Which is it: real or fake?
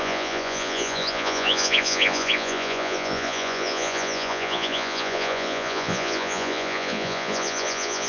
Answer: fake